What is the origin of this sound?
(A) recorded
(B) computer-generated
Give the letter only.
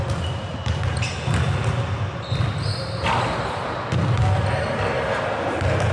A